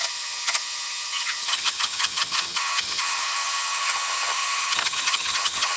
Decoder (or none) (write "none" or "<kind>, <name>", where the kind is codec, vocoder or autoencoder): vocoder, HiFi-GAN